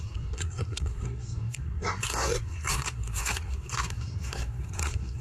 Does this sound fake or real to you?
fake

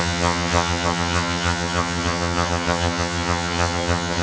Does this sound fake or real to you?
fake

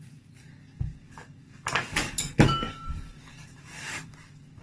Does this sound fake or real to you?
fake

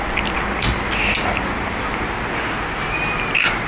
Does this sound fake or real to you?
real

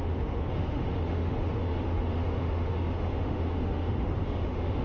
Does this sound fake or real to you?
fake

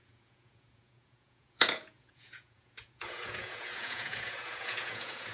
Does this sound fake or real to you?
fake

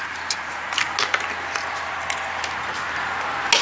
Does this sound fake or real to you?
real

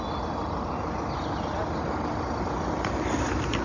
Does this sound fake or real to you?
real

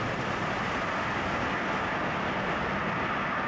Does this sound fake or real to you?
real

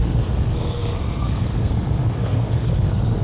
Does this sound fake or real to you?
fake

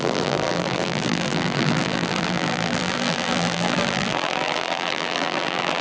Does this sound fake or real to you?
fake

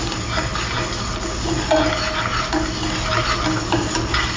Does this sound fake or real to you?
real